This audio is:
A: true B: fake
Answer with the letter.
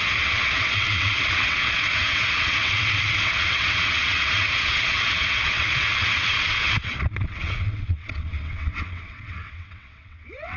B